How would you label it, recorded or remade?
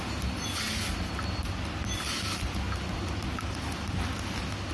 recorded